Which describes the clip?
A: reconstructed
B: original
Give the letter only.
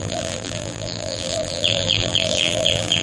A